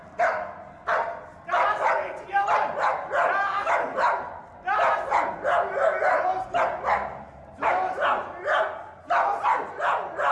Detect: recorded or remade recorded